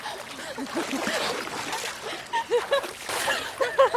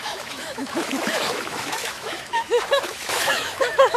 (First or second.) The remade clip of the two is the second